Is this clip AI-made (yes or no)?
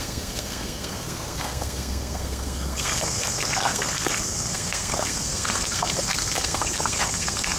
yes